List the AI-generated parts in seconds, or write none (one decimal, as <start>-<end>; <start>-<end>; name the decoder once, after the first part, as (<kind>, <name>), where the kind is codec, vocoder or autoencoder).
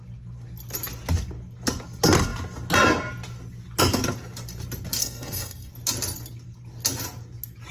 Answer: 5.0-5.7 (codec, SNAC)